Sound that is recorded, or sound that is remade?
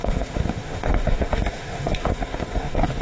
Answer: remade